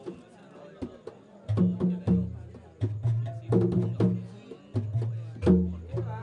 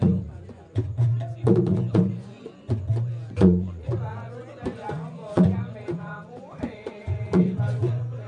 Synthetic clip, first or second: second